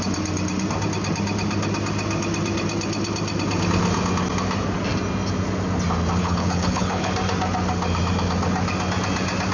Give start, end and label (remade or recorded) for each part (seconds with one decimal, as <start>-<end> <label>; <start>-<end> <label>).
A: 0.0-6.2 recorded; 6.2-7.1 remade; 7.1-9.5 recorded